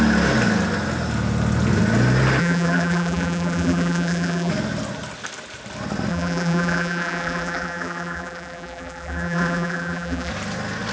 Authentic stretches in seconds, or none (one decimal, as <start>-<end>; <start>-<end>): 0.0-2.4; 4.5-6.1; 10.3-10.9